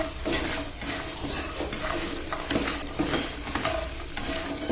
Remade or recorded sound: recorded